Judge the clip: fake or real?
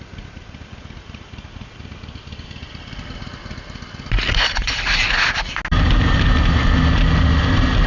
real